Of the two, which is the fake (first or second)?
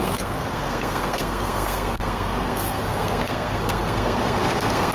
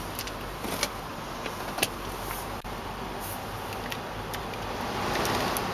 first